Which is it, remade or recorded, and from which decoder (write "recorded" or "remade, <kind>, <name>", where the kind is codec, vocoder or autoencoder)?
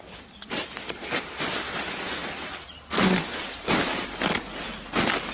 recorded